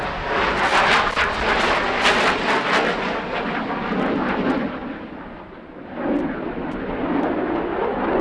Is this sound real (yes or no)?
yes